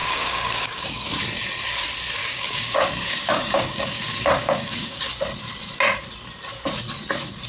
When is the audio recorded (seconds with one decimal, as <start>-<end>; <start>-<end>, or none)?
1.1-2.2; 5.0-7.5